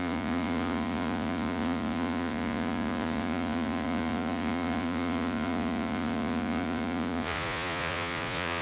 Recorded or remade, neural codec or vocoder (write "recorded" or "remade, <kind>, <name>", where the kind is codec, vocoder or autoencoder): remade, vocoder, Vocos